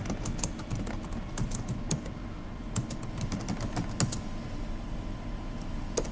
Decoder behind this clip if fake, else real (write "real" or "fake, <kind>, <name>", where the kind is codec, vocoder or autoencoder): real